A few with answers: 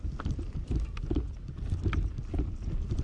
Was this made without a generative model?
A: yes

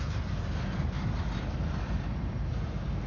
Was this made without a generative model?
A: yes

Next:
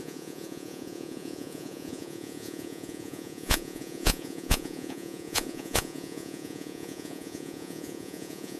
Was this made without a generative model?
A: no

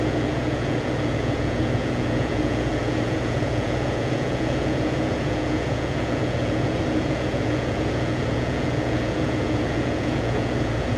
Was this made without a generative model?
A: no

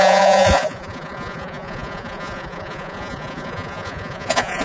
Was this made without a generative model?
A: no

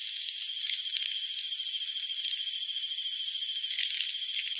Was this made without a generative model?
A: yes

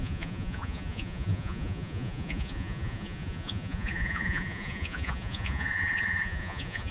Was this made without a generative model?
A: no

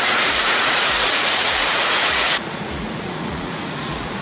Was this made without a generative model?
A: no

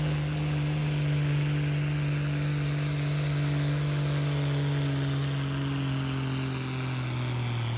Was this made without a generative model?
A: yes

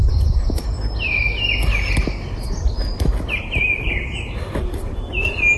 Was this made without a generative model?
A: yes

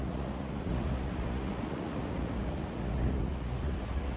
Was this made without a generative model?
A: no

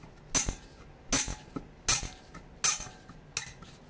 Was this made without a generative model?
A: yes